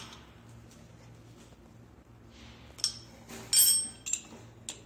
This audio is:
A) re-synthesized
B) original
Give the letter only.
B